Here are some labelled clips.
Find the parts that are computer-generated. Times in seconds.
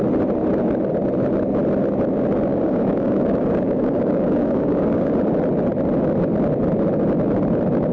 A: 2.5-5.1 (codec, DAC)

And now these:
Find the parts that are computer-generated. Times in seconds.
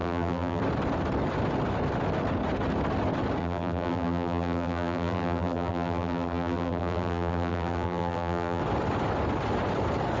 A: 0.0-0.6 (vocoder, BigVGAN v2); 3.4-8.6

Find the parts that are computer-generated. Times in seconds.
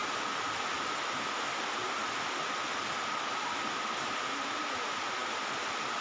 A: none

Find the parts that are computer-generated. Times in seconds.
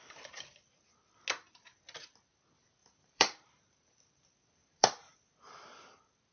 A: 2.8-3.6 (vocoder, BigVGAN v2); 4.6-5.1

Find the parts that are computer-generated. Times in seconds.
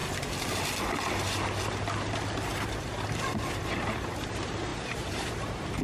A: 3.5-5.8 (vocoder, BigVGAN v2)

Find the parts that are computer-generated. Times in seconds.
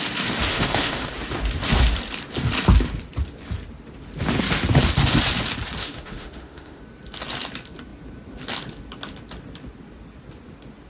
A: 0.5-1.1 (autoencoder, DAC-VAE); 5.8-6.8